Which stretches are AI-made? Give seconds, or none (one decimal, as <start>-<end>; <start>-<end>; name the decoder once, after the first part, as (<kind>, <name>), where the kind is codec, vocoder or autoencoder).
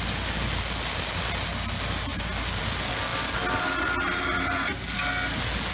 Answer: none